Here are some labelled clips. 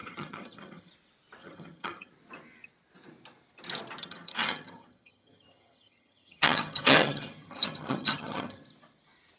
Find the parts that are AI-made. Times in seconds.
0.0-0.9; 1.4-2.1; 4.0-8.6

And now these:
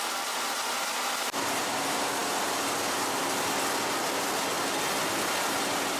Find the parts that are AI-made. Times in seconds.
none